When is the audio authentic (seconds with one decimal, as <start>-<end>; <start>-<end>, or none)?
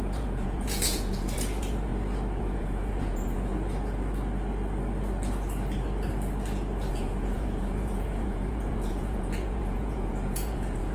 1.9-2.4; 3.5-6.9